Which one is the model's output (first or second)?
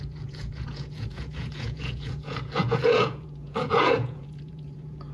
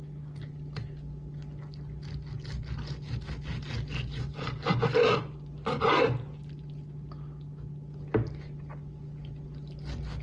first